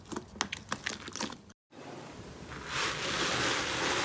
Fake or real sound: real